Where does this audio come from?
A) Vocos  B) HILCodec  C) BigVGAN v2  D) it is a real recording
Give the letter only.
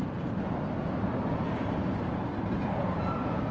D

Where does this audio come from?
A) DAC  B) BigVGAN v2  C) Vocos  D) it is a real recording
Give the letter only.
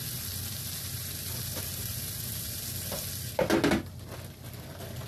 D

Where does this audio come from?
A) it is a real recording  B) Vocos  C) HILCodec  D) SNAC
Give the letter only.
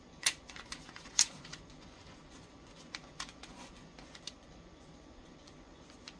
B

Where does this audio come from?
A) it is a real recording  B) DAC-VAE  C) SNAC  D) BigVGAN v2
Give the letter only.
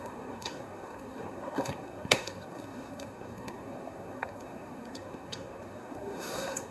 C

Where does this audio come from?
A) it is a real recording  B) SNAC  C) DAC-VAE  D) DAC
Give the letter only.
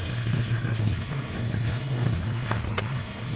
B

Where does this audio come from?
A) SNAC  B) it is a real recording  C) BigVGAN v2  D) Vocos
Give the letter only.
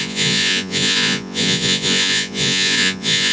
D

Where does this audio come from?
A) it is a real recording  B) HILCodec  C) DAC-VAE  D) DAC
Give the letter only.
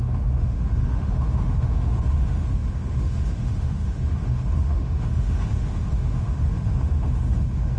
C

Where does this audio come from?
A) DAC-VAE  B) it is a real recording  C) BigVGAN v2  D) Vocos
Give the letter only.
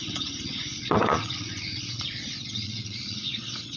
D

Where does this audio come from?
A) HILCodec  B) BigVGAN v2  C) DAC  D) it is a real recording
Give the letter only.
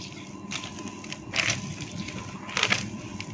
D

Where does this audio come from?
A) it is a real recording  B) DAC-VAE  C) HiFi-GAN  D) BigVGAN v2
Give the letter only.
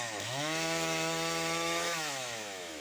B